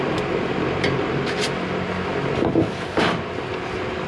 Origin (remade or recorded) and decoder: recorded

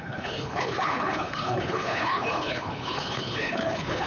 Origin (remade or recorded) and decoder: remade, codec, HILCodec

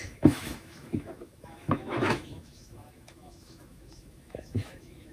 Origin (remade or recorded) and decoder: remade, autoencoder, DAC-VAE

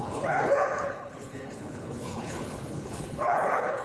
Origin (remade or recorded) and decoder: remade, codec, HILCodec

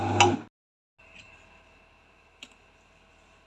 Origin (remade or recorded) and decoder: recorded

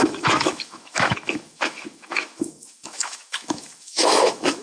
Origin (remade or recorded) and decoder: remade, autoencoder, DAC-VAE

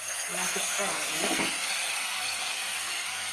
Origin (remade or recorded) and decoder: remade, codec, SNAC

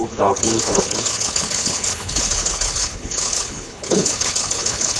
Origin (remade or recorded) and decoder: remade, codec, HILCodec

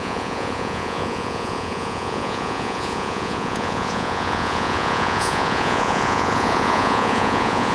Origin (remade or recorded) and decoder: remade, vocoder, Vocos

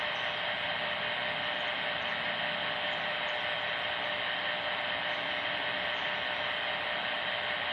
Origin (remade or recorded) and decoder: recorded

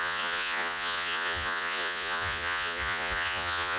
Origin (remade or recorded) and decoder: remade, vocoder, Vocos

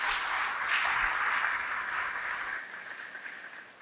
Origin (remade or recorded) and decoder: recorded